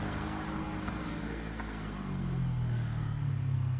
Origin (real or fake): fake